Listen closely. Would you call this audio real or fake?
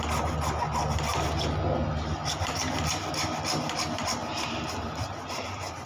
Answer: real